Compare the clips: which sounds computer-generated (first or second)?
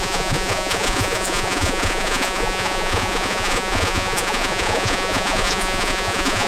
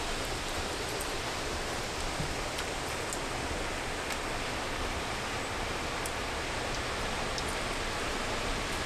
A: first